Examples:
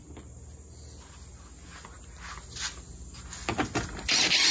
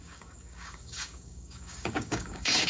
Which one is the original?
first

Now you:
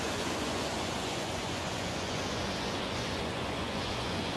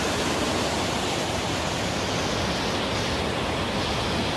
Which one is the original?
second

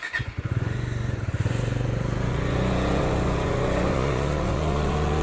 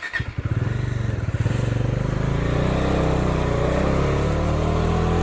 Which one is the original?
second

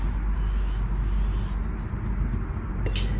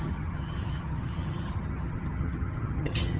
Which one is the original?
first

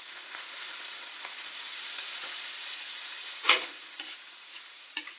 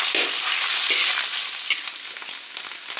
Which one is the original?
second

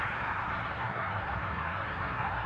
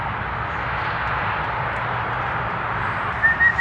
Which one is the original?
second